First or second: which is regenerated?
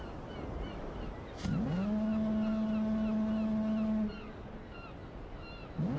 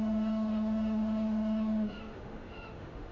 second